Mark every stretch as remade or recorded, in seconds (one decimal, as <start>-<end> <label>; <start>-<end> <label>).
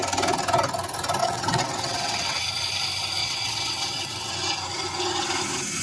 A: 0.0-1.2 recorded; 1.2-2.4 remade; 2.4-3.2 recorded; 3.2-4.3 remade; 4.3-5.8 recorded